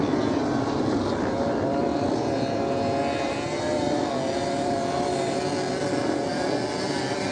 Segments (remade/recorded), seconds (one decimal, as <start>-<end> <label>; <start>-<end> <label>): 0.0-7.3 recorded